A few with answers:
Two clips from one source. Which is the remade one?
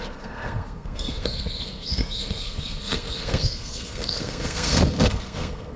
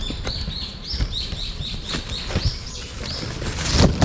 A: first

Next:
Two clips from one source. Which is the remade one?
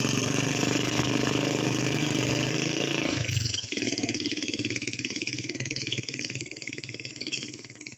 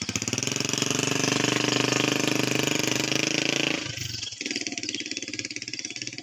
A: first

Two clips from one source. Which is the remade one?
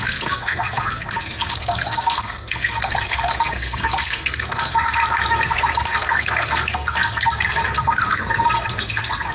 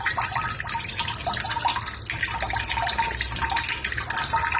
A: first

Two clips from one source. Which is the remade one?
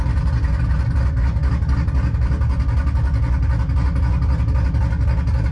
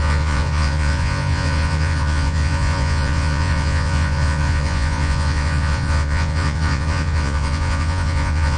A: second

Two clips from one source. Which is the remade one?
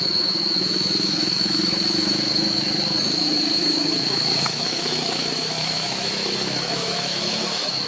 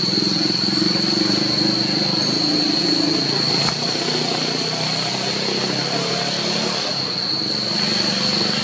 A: first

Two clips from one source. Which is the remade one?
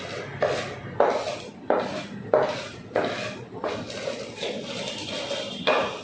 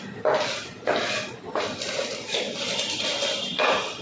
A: second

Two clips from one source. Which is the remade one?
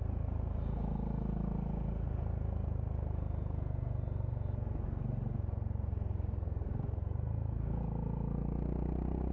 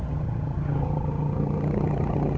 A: second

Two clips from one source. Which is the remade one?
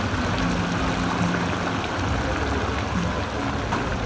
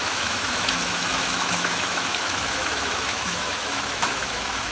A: second